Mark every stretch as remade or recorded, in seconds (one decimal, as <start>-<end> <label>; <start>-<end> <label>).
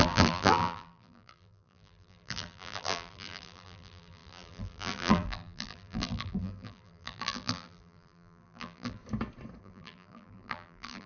0.0-9.0 remade; 9.0-9.6 recorded; 9.6-11.1 remade